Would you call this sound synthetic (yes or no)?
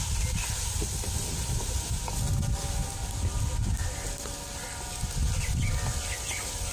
no